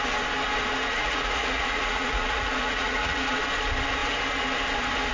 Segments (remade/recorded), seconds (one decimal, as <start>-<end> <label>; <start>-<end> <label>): 0.0-0.8 recorded; 0.8-3.4 remade; 3.4-5.1 recorded